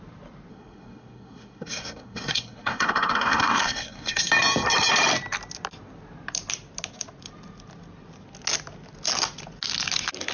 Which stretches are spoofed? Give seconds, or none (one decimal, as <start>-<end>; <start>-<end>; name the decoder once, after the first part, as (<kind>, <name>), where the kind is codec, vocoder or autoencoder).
0.5-4.3 (codec, SNAC)